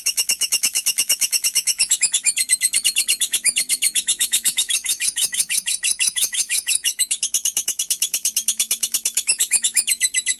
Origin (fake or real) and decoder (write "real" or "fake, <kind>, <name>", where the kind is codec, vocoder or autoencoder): fake, autoencoder, DAC-VAE